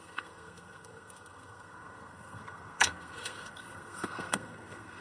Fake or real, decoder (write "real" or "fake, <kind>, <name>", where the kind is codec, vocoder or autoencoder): fake, codec, SNAC